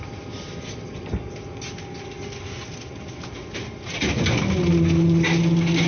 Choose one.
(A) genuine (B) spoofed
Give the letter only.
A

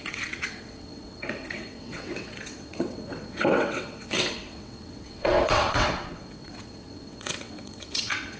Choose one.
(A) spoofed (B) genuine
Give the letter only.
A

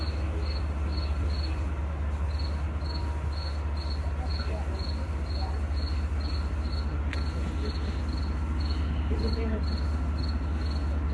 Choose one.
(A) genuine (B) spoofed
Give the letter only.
A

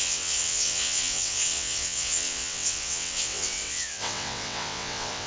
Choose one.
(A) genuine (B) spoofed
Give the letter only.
B